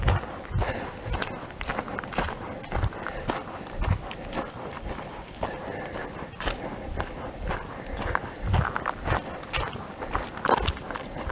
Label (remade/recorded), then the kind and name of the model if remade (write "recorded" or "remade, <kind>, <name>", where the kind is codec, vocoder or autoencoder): recorded